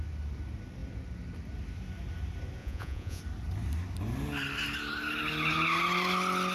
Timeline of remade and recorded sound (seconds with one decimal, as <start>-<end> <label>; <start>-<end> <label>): 0.0-2.6 recorded; 2.6-3.2 remade; 3.2-6.5 recorded